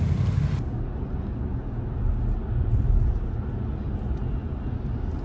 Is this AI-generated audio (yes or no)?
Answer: no